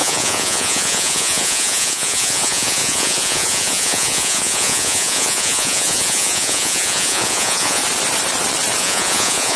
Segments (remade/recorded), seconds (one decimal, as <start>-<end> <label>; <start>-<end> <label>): 0.0-7.8 remade; 7.8-8.8 recorded; 8.8-9.6 remade